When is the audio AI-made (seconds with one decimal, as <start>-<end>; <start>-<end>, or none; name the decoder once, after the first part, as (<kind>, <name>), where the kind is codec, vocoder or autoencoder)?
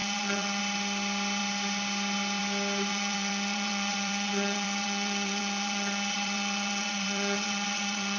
0.0-0.6 (vocoder, Vocos); 2.9-8.2